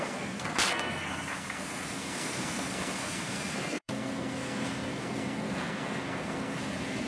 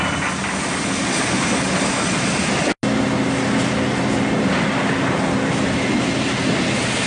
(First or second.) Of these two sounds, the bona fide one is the second